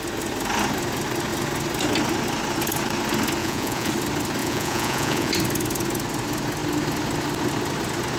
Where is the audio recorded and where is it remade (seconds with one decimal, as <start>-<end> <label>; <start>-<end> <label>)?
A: 0.0-3.4 recorded; 3.4-3.9 remade; 3.9-4.4 recorded; 4.4-5.3 remade; 5.3-8.2 recorded